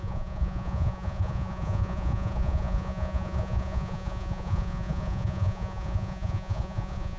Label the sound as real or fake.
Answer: fake